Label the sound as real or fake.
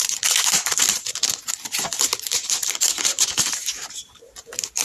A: fake